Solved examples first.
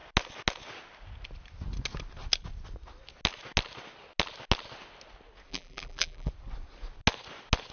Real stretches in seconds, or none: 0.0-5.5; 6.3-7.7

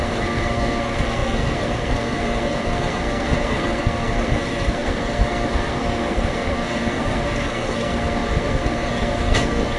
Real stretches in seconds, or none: none

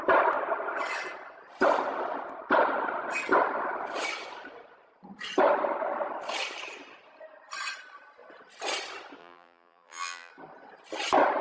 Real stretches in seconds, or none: 0.0-9.2; 10.3-11.4

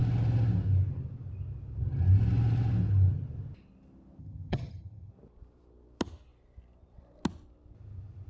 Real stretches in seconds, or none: 0.0-4.2; 5.1-8.3